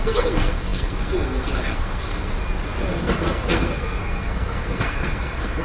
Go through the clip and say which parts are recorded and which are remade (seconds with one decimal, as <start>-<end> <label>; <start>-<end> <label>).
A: 0.0-2.3 remade; 2.3-2.9 recorded; 2.9-5.6 remade